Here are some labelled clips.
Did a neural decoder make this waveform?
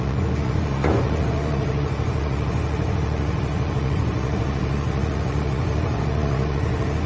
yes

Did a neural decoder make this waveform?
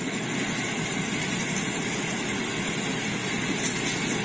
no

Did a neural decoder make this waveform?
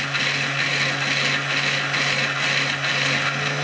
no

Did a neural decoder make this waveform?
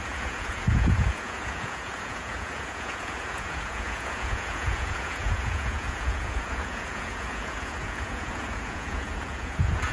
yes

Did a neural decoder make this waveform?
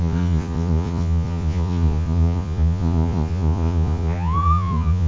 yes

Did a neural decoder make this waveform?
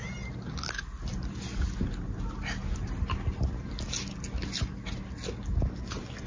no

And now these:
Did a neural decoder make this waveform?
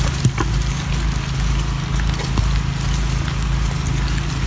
no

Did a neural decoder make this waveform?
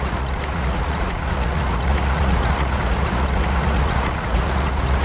yes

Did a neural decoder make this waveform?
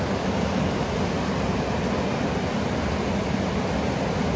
no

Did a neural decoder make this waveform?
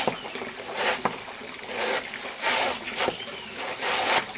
no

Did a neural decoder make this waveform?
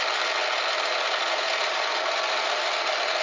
no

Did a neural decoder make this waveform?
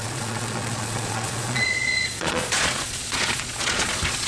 yes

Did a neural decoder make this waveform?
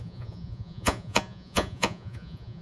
yes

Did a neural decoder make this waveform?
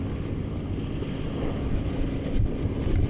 no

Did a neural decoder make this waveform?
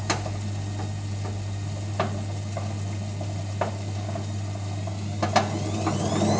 no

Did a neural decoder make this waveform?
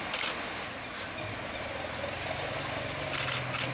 no